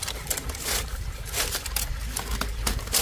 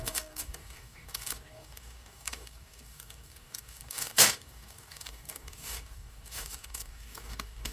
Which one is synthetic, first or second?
second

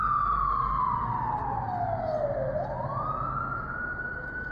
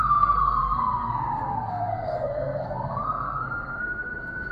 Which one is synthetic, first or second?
second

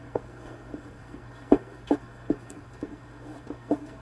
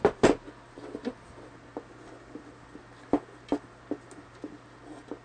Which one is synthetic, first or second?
first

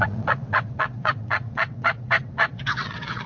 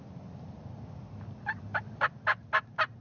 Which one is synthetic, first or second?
first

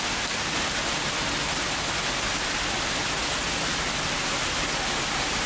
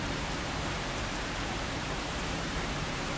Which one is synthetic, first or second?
second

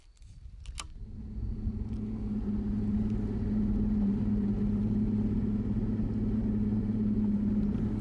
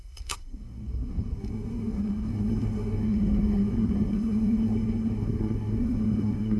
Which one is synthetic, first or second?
second